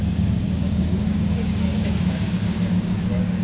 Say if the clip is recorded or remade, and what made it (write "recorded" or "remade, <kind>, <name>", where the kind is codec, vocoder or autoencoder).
remade, codec, DAC